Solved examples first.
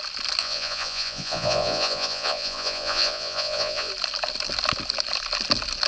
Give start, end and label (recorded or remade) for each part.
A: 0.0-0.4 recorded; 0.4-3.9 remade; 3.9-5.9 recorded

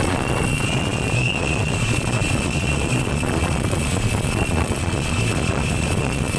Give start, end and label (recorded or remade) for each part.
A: 0.0-6.4 remade

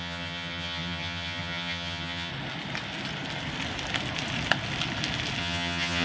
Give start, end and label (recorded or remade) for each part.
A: 0.0-2.3 remade; 2.3-5.4 recorded; 5.4-6.0 remade

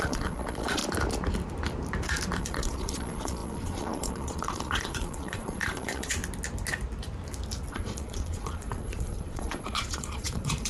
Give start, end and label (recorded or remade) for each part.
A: 0.0-0.8 remade; 0.8-2.4 recorded; 2.4-6.2 remade; 6.2-7.7 recorded; 7.7-10.7 remade

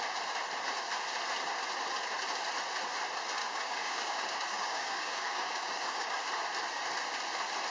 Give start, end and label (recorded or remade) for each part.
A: 0.0-3.4 recorded; 3.4-6.2 remade; 6.2-7.7 recorded

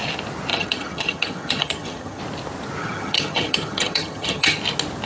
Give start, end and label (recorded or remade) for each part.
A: 0.0-0.5 recorded; 0.5-2.2 remade; 2.2-2.8 recorded; 2.8-4.6 remade; 4.6-5.1 recorded

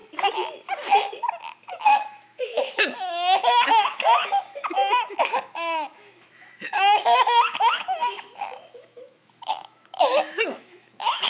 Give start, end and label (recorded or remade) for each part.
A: 0.0-1.6 recorded; 1.6-11.3 remade